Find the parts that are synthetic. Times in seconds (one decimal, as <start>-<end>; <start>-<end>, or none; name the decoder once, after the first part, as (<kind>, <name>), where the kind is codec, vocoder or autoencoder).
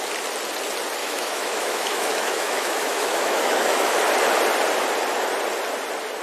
1.0-4.0 (autoencoder, DAC-VAE)